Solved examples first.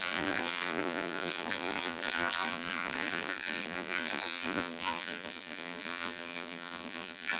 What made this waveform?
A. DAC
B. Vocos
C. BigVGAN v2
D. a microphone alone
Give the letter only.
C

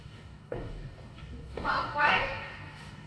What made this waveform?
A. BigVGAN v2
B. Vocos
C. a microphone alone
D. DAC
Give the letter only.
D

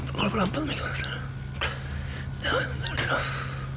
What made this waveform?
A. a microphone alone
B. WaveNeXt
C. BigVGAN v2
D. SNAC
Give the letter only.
A